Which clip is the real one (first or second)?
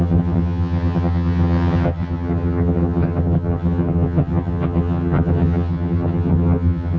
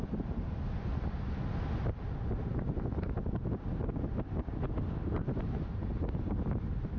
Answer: second